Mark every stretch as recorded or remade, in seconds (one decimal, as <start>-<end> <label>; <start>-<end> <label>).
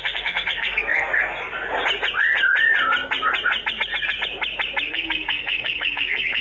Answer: 0.0-1.1 remade; 1.1-4.9 recorded; 4.9-6.4 remade